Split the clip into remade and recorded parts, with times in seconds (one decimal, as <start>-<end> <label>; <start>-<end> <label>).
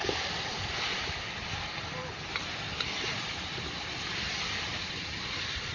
0.0-5.7 recorded